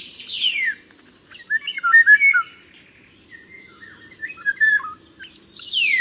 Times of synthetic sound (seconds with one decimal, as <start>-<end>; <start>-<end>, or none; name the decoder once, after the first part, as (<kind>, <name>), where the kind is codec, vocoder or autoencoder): none